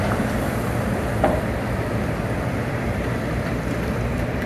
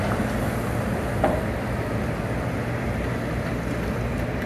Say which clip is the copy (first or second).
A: first